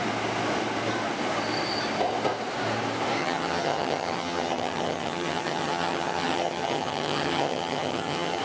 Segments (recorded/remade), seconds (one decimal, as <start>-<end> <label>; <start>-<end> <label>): 0.0-3.2 recorded; 3.2-8.4 remade